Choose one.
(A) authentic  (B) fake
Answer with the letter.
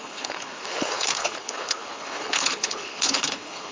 B